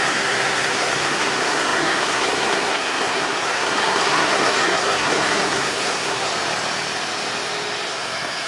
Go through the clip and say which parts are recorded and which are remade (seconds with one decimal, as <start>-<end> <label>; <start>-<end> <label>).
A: 0.0-6.3 remade; 6.3-7.9 recorded; 7.9-8.5 remade